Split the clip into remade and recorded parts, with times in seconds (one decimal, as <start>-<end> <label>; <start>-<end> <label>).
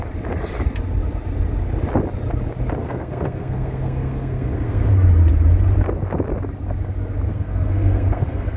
0.0-2.8 recorded; 2.8-4.9 remade; 4.9-7.3 recorded; 7.3-8.6 remade